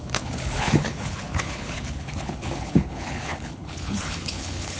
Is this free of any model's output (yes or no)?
no